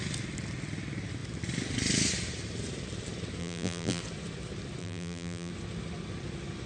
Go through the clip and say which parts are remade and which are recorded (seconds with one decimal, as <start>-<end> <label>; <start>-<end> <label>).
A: 0.0-3.4 recorded; 3.4-4.0 remade; 4.0-4.8 recorded; 4.8-5.5 remade; 5.5-6.7 recorded